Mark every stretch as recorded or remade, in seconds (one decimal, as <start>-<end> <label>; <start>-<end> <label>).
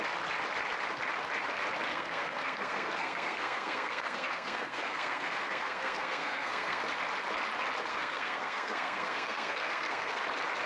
0.0-1.9 recorded; 1.9-6.8 remade; 6.8-7.9 recorded; 7.9-10.2 remade; 10.2-10.7 recorded